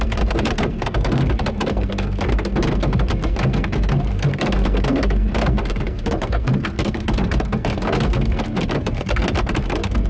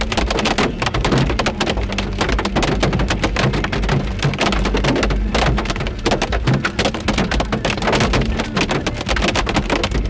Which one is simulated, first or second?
first